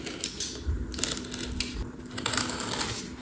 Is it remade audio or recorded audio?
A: recorded